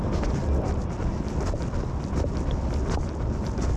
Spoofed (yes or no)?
no